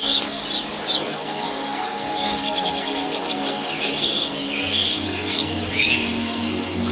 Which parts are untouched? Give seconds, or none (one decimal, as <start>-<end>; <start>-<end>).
0.4-1.0